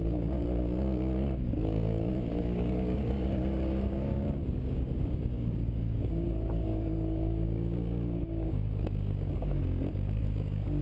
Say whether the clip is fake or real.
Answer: fake